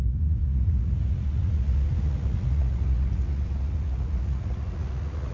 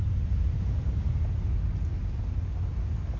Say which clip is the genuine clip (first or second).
second